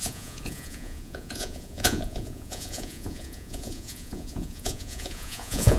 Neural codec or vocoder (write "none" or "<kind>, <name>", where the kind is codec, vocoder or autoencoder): vocoder, Vocos